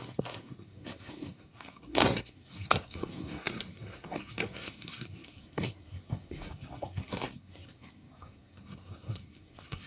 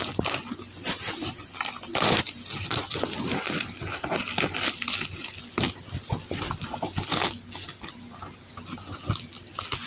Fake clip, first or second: first